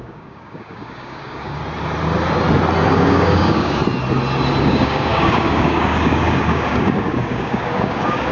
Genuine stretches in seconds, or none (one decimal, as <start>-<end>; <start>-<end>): 1.6-2.9; 3.8-4.6